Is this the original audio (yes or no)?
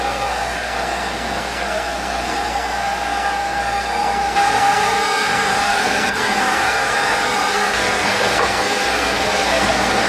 no